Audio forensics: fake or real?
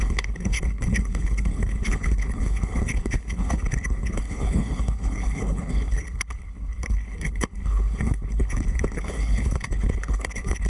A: fake